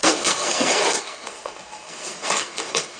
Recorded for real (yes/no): no